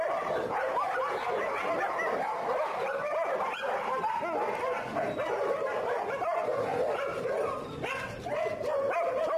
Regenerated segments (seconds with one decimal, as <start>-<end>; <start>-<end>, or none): none